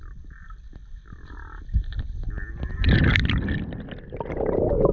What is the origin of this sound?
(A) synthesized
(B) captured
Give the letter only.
B